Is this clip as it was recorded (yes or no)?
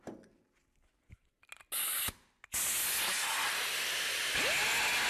yes